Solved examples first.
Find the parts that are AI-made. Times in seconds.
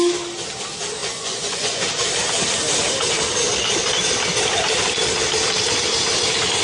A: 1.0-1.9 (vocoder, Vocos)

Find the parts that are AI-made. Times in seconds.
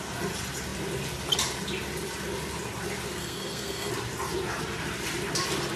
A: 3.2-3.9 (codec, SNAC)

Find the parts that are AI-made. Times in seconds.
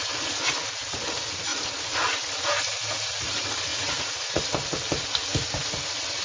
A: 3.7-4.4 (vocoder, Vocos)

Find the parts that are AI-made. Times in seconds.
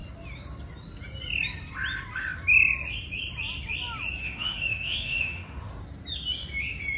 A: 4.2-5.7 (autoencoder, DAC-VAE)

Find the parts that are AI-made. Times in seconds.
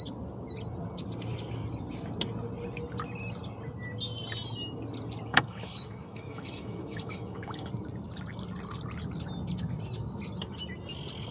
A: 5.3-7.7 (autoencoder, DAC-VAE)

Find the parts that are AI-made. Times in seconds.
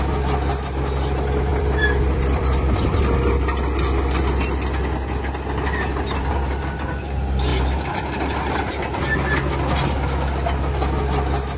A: 1.5-3.0 (vocoder, BigVGAN v2); 7.5-9.0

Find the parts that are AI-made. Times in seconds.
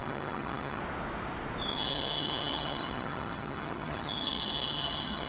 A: 0.0-0.8 (vocoder, HiFi-GAN); 1.7-5.3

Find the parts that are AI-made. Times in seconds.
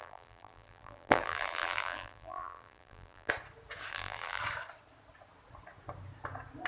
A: 0.0-3.3 (vocoder, BigVGAN v2); 3.9-4.4